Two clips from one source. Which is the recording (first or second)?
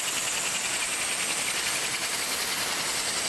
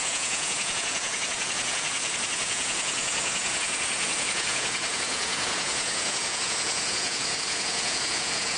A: first